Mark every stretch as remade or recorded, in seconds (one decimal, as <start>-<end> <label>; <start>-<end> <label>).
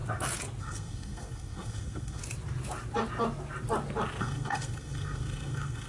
0.0-0.6 recorded; 0.6-2.2 remade; 2.2-4.2 recorded; 4.2-5.9 remade